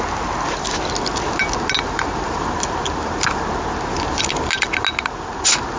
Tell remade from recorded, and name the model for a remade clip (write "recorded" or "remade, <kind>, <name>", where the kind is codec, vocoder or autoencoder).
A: recorded